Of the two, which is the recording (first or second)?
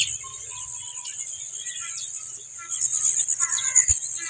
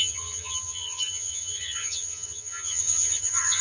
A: first